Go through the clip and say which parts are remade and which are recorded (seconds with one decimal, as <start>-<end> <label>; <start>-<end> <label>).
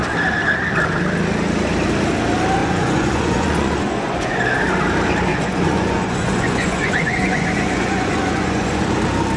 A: 0.0-2.6 recorded; 2.6-4.4 remade; 4.4-5.3 recorded; 5.3-8.9 remade; 8.9-9.4 recorded